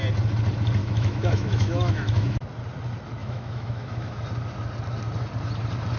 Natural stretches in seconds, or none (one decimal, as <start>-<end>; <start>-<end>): 0.0-0.8; 2.4-3.2; 4.2-6.0